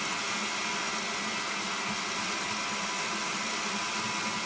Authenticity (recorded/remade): recorded